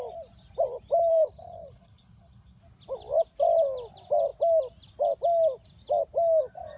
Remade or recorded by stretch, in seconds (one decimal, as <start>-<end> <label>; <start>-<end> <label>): 0.0-1.1 recorded; 1.1-2.6 remade; 2.6-6.8 recorded